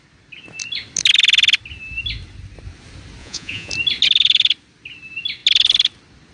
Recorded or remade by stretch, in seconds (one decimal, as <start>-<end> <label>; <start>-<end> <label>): 0.0-3.2 recorded; 3.2-3.7 remade; 3.7-6.3 recorded